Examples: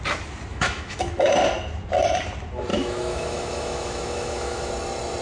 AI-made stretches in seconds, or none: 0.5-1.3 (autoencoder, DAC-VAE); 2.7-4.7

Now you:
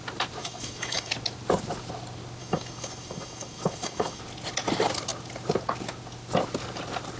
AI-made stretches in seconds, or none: 0.4-1.1 (autoencoder, DAC-VAE); 2.4-4.2

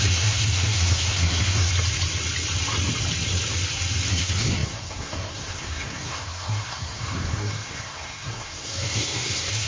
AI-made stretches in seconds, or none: 0.0-1.7 (codec, SNAC); 4.1-9.7

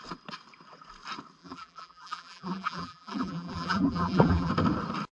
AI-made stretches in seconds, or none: 1.4-4.5 (vocoder, BigVGAN v2)

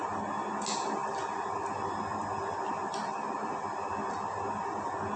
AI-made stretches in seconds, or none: none

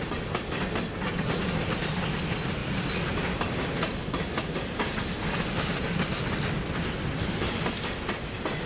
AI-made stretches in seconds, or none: none

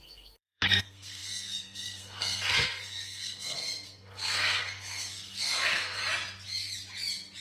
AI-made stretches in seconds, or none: 0.0-6.0 (codec, SNAC)